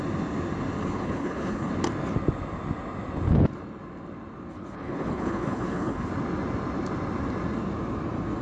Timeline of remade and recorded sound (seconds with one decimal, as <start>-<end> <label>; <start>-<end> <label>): 0.0-0.8 recorded; 0.8-1.7 remade; 1.7-4.5 recorded; 4.5-6.1 remade; 6.1-8.4 recorded